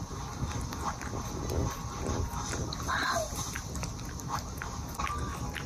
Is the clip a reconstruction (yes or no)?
no